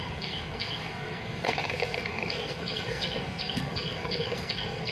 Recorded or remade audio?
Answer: remade